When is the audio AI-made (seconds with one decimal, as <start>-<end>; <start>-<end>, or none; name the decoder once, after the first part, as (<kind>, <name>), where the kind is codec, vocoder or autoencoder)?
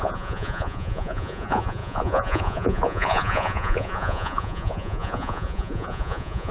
0.0-6.5 (vocoder, Vocos)